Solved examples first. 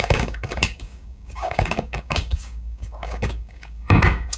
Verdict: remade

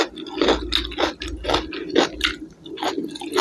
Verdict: recorded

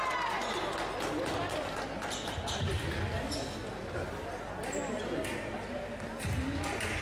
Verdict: recorded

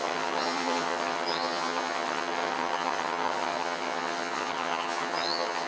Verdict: remade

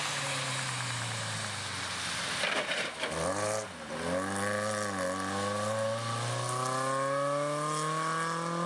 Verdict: recorded